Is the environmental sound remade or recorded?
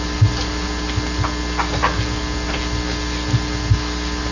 recorded